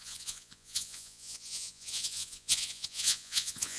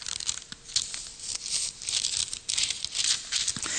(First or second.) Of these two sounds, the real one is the second